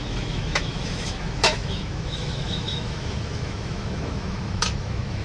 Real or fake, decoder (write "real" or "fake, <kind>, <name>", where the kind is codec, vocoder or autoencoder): fake, autoencoder, DAC-VAE